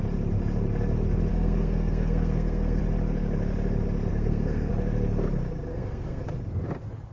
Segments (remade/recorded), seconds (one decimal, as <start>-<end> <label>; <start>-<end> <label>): 0.0-1.3 recorded; 1.3-2.8 remade; 2.8-4.1 recorded; 4.1-4.7 remade; 4.7-5.7 recorded; 5.7-6.2 remade; 6.2-7.1 recorded